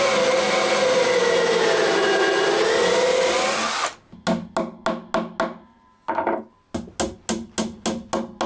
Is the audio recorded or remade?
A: recorded